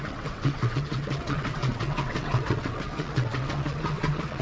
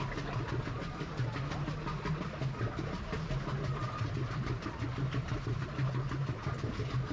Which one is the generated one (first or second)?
first